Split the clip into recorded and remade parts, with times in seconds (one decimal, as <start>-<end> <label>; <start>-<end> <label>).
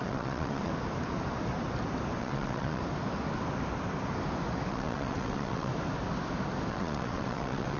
0.0-0.7 remade; 0.7-2.2 recorded; 2.2-2.8 remade; 2.8-4.7 recorded; 4.7-5.7 remade; 5.7-6.7 recorded; 6.7-7.8 remade